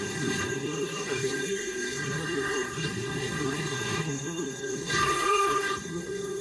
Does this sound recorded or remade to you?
remade